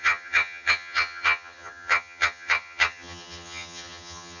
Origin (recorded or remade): remade